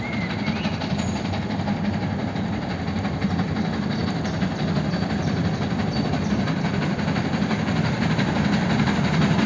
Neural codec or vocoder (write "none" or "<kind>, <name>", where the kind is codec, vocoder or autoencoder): vocoder, BigVGAN v2